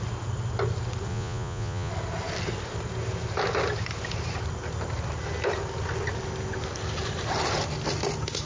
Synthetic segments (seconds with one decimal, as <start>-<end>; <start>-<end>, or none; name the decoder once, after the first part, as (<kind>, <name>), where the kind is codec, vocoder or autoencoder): 1.1-1.9 (vocoder, Vocos)